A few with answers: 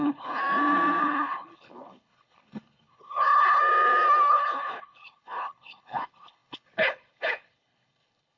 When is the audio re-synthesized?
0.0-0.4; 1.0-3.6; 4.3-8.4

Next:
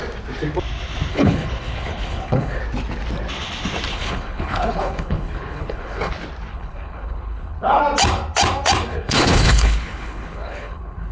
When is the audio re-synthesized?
1.1-2.6; 3.9-6.1; 6.5-7.8; 8.9-11.1

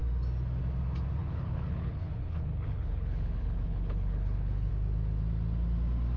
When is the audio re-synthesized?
1.2-4.7

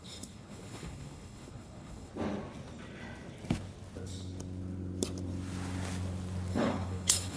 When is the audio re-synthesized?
0.0-2.1; 6.5-7.4

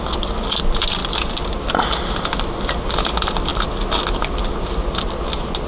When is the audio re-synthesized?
none

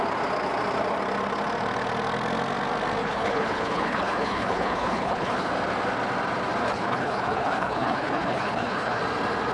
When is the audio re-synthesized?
3.0-5.5; 6.6-9.0